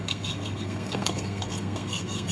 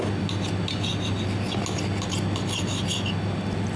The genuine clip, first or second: second